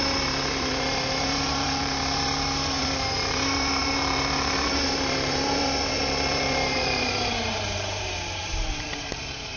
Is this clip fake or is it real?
fake